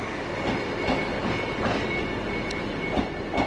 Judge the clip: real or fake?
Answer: real